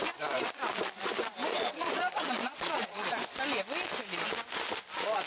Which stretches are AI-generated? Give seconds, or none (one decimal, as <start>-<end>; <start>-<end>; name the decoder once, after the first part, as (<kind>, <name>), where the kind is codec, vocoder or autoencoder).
1.5-3.4 (vocoder, Vocos)